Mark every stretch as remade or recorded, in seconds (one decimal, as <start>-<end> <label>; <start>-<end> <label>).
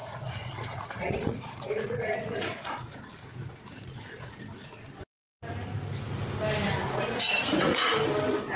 0.0-4.7 remade; 4.7-6.8 recorded; 6.8-7.9 remade; 7.9-8.6 recorded